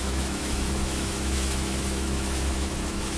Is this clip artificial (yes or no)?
yes